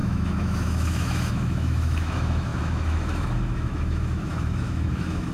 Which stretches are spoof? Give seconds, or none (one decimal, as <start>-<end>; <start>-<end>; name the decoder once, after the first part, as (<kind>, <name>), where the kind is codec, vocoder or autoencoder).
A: 0.0-5.3 (autoencoder, DAC-VAE)